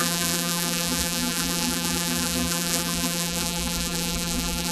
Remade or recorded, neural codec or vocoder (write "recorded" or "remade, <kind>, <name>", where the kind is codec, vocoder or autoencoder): remade, vocoder, BigVGAN v2